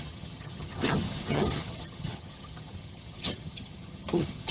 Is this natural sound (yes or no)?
no